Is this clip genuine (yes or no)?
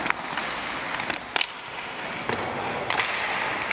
yes